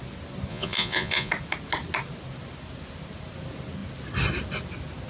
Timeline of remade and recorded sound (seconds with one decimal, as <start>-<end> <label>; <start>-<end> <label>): 0.0-0.5 recorded; 0.5-1.3 remade; 1.3-5.1 recorded